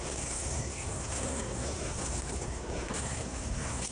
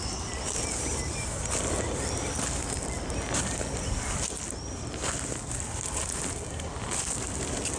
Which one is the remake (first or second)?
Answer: first